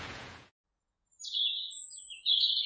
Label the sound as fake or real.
fake